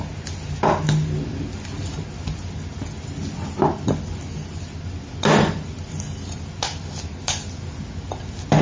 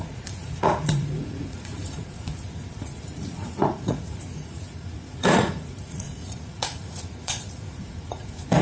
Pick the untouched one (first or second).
first